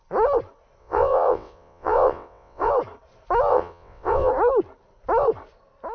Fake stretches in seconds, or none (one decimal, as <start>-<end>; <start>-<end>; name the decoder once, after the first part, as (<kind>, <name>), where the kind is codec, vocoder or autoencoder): 0.8-2.7 (vocoder, WaveNeXt); 3.5-4.3